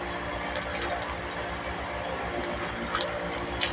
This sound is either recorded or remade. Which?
recorded